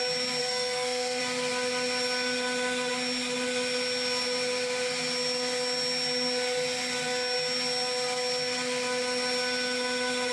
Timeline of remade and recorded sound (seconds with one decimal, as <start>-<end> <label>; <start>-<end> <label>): 0.0-0.4 recorded; 0.4-1.2 remade; 1.2-10.3 recorded